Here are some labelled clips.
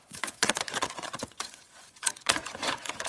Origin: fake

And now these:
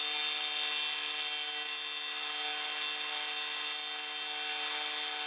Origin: real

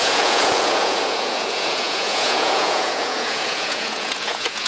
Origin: fake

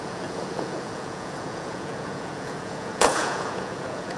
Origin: fake